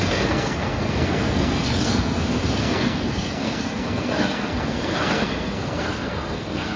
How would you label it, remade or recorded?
remade